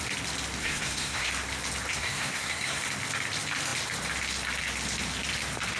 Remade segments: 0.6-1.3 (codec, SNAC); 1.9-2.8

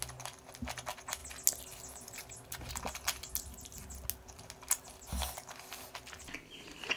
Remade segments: none

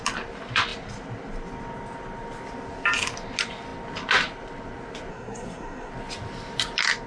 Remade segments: 5.1-5.9 (codec, SNAC)

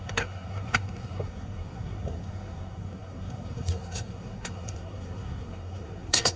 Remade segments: 0.0-6.4 (codec, SNAC)

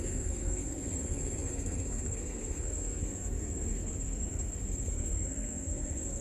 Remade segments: 0.0-6.2 (codec, SNAC)

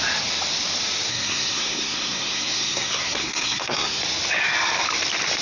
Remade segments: 1.1-4.0 (codec, SNAC)

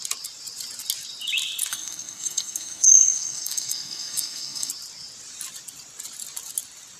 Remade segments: 1.7-4.7 (codec, SNAC)